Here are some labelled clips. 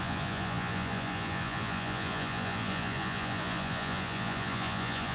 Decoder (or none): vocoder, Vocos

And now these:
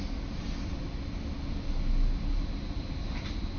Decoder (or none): none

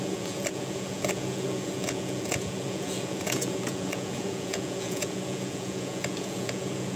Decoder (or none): vocoder, Vocos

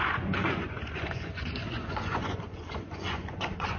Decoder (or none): vocoder, Vocos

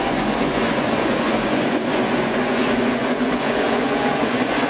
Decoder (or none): vocoder, Vocos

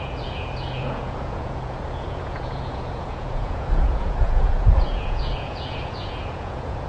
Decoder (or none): vocoder, Vocos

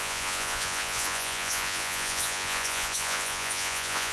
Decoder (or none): vocoder, Vocos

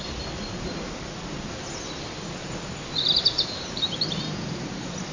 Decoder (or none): none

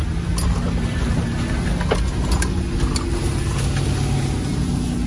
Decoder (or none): none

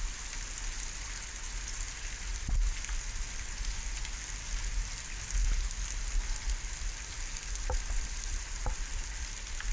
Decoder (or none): none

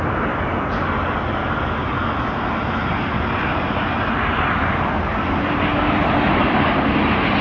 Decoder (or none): none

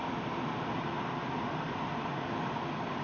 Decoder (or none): none